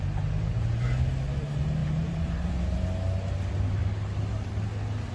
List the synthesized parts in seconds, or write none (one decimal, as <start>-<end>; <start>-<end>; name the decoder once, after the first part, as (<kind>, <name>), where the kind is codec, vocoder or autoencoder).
1.8-2.5 (vocoder, BigVGAN v2)